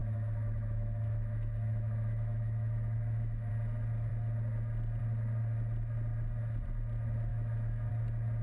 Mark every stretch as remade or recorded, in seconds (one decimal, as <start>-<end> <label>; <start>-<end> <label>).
0.0-3.5 remade; 3.5-7.3 recorded; 7.3-7.9 remade; 7.9-8.4 recorded

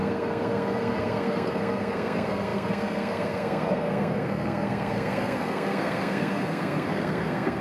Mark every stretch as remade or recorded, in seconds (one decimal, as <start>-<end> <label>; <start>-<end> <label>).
0.0-7.6 remade

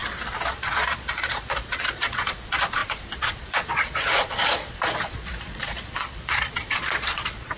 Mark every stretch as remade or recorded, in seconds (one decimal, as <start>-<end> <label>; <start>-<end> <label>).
0.0-0.5 recorded; 0.5-7.6 remade